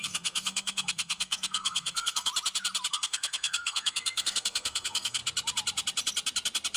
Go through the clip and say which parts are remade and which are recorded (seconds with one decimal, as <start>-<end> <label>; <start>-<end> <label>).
0.0-2.3 remade; 2.3-2.9 recorded; 2.9-5.2 remade; 5.2-6.8 recorded